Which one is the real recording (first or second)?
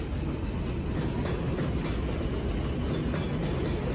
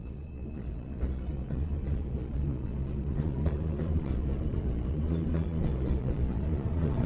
first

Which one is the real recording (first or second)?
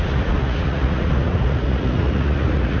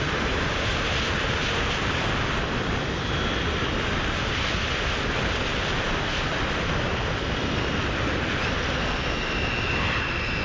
second